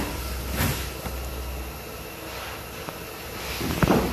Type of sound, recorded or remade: recorded